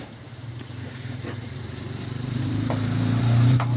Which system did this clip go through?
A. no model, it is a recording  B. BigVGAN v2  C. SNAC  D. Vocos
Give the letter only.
B